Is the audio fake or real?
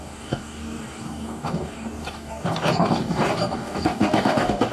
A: fake